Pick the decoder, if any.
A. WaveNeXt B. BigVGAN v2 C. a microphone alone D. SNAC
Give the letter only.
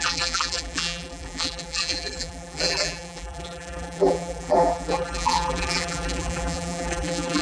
B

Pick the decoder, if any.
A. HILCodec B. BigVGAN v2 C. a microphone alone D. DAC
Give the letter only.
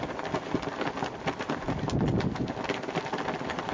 C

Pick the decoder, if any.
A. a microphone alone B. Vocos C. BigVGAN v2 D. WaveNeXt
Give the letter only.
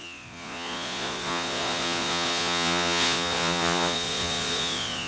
B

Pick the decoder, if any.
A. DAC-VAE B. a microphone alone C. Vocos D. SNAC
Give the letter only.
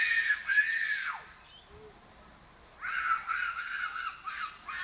B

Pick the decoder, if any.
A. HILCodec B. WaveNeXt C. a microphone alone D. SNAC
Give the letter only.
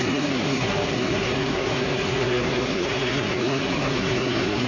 D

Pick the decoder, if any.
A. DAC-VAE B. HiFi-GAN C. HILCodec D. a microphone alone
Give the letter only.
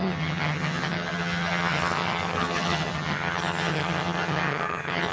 B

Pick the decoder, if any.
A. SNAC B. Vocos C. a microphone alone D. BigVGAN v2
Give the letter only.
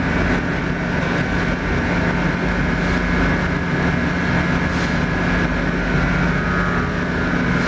C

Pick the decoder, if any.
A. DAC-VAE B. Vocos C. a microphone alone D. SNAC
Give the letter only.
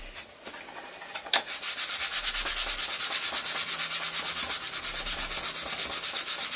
C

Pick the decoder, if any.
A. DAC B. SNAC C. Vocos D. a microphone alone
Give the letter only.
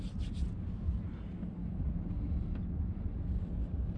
D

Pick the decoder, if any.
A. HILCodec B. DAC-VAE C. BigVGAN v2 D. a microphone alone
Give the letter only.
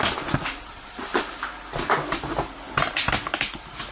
D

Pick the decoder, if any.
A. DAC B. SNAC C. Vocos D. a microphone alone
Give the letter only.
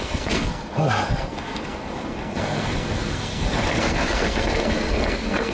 B